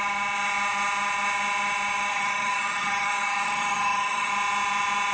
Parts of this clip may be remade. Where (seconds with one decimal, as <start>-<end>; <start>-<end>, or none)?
2.1-4.3

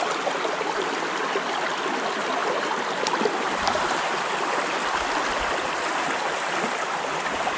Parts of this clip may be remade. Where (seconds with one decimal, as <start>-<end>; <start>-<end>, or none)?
none

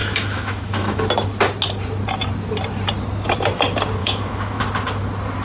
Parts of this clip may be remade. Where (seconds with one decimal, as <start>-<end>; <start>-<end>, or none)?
0.0-1.0; 4.0-4.6

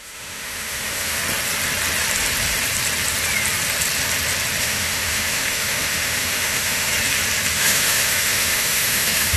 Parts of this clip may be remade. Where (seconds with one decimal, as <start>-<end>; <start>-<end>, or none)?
0.0-1.2; 4.6-6.9; 7.5-9.4

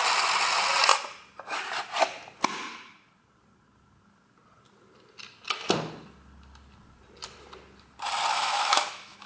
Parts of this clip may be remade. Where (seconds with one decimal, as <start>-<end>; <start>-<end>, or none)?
8.3-9.3